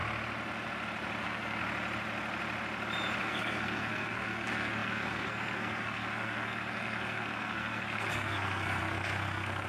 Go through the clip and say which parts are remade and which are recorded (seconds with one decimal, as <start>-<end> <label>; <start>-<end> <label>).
0.0-1.2 recorded; 1.2-1.6 remade; 1.6-3.2 recorded; 3.2-9.7 remade